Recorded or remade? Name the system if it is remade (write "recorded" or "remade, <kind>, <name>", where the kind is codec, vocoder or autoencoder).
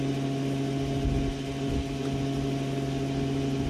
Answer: recorded